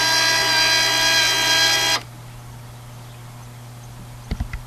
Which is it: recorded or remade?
recorded